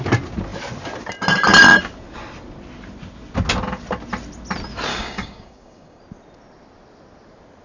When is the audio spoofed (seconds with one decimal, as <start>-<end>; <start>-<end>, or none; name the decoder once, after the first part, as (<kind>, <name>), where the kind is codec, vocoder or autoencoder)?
4.9-6.0 (codec, DAC)